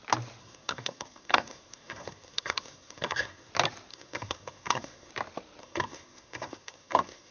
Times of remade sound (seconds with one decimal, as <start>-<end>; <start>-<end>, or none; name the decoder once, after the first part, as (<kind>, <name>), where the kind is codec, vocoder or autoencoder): 0.4-3.5 (codec, SNAC); 3.9-5.1; 5.6-7.3